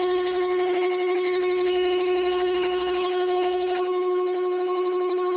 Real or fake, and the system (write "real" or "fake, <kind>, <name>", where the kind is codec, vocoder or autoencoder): fake, codec, SNAC